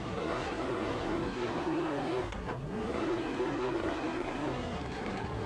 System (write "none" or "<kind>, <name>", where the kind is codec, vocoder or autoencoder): codec, SNAC